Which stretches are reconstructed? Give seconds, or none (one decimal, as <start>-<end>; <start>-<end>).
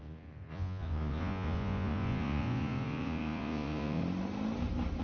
0.0-4.0